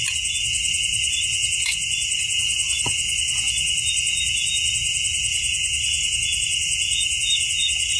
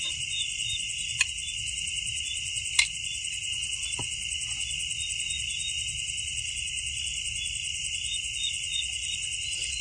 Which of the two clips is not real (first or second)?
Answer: first